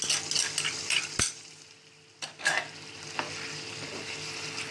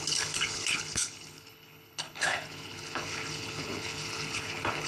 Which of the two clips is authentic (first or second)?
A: first